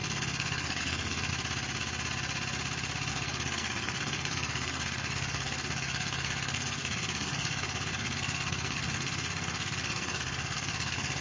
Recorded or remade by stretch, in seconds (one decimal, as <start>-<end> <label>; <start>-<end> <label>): 0.0-1.3 remade; 1.3-3.1 recorded; 3.1-11.2 remade